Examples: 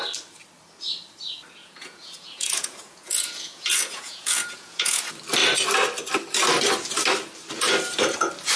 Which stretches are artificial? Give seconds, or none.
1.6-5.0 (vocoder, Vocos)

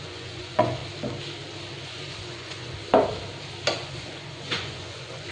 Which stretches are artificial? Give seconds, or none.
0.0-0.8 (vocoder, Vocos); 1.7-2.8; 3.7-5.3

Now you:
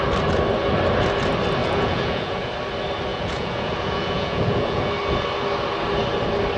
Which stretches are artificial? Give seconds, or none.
1.6-2.5 (vocoder, Vocos); 3.1-4.9